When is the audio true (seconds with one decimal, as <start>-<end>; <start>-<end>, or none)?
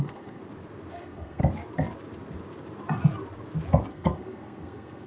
0.4-0.9; 1.4-3.9